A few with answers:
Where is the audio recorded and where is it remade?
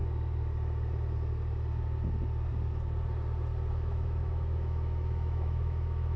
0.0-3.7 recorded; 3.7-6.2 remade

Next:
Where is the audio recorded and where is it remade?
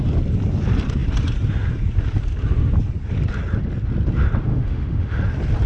0.0-4.5 recorded; 4.5-5.2 remade; 5.2-5.7 recorded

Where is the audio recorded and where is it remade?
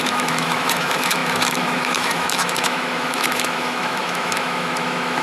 0.0-5.2 remade